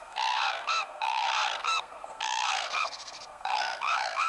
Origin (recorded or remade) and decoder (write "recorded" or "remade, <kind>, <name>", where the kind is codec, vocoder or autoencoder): remade, codec, SNAC